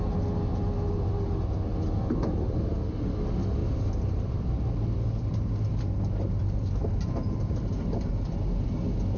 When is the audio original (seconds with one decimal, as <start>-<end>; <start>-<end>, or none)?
0.0-3.6; 4.8-6.4; 8.1-9.2